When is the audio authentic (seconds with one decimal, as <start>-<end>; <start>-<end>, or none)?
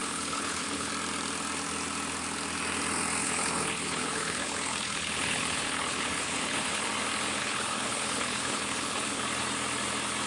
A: 0.9-3.2; 6.9-7.4; 9.2-10.3